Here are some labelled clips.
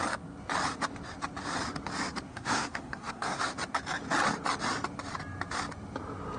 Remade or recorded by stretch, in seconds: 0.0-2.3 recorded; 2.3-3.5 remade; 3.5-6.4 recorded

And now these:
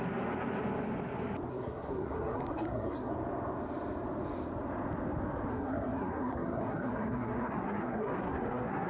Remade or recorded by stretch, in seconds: 0.0-1.5 recorded; 1.5-3.1 remade; 3.1-5.5 recorded; 5.5-8.9 remade

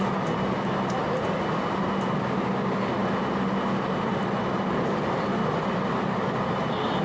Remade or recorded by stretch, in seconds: 0.0-7.0 recorded

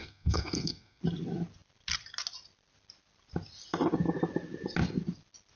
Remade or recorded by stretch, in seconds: 0.0-1.0 remade; 1.0-5.6 recorded

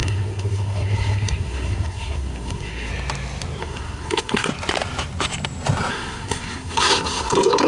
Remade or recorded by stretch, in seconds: 0.0-2.9 remade; 2.9-3.6 recorded; 3.6-4.5 remade; 4.5-5.9 recorded; 5.9-7.7 remade

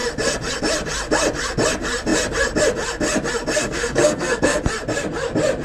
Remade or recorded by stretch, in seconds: 0.0-3.6 recorded; 3.6-4.6 remade; 4.6-5.6 recorded